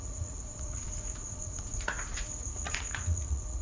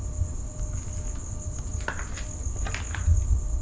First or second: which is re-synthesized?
first